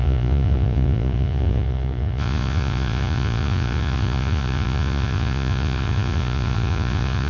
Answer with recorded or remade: remade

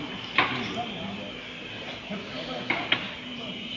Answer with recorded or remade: recorded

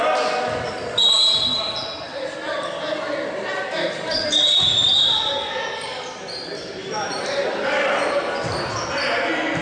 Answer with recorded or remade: recorded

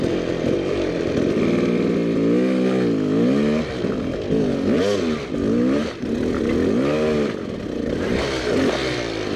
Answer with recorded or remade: recorded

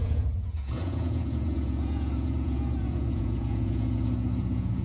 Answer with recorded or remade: remade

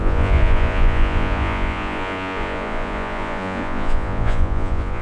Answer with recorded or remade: remade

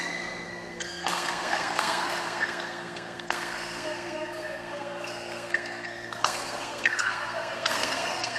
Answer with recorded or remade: remade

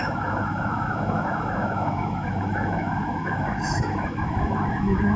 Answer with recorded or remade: remade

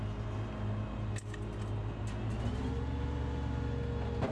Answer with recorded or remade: recorded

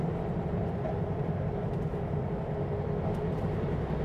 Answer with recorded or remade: recorded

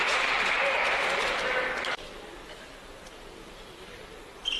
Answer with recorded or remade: recorded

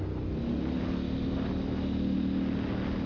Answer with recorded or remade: recorded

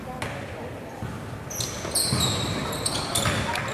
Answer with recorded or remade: recorded